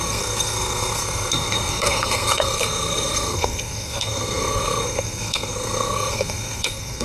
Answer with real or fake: fake